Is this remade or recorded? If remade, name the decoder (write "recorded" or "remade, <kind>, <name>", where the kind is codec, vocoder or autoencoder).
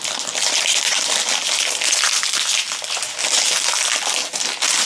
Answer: recorded